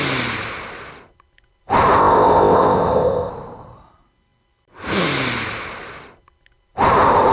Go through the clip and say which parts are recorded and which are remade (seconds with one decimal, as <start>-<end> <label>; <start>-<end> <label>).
0.0-2.0 recorded; 2.0-3.3 remade; 3.3-7.3 recorded